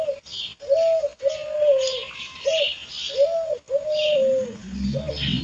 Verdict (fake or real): real